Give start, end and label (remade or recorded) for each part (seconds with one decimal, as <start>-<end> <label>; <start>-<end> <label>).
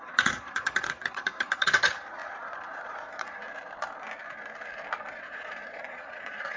0.0-3.4 remade; 3.4-5.1 recorded; 5.1-6.6 remade